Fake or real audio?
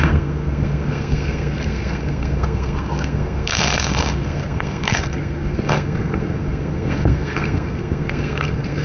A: fake